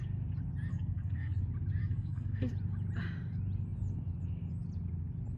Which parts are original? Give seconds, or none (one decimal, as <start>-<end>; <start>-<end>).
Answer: 0.0-0.7; 1.4-1.8; 2.5-5.4

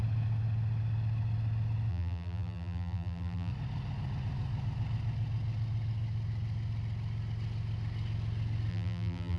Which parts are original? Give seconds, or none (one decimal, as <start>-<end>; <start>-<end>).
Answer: 0.0-1.9; 3.5-8.7